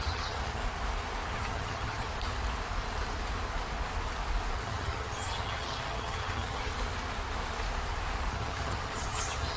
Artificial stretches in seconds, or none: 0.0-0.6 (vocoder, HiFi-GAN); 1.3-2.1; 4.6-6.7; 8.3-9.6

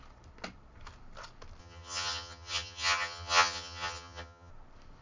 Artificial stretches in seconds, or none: 1.6-4.5 (vocoder, HiFi-GAN)

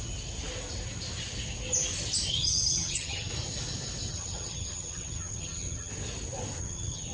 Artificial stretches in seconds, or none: 2.3-3.3 (vocoder, HiFi-GAN); 4.1-5.9; 6.6-7.1

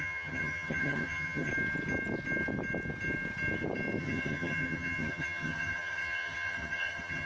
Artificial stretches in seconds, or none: 0.0-1.5 (vocoder, HiFi-GAN); 4.0-7.3

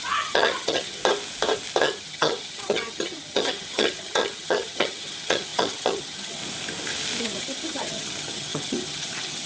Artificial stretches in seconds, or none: 0.0-1.0 (vocoder, HiFi-GAN); 1.8-6.4; 7.2-9.5

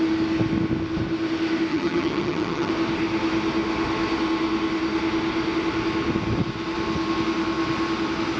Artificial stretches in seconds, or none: 1.7-2.7 (vocoder, HiFi-GAN)